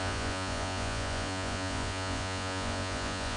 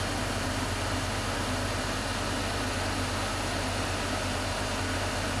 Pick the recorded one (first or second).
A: second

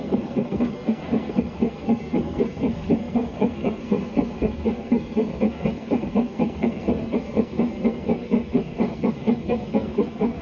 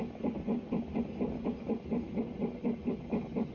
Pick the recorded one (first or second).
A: second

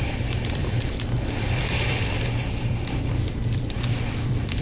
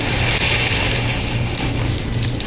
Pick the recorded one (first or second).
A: second